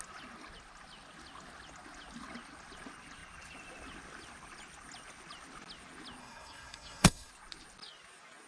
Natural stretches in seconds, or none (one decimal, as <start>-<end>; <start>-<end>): 0.0-6.2; 7.3-8.5